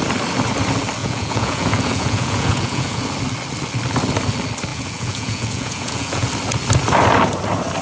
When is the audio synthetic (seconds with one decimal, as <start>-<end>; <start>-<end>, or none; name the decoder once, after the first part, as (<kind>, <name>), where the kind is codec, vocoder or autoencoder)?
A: 1.0-3.0 (vocoder, Vocos); 4.7-6.3